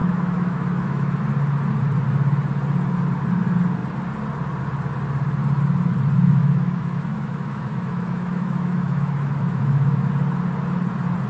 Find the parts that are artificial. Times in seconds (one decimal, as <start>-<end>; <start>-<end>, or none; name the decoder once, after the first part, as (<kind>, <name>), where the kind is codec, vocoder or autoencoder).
0.0-1.2 (autoencoder, DAC-VAE); 6.4-10.1